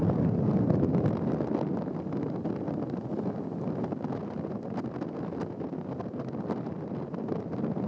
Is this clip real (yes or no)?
yes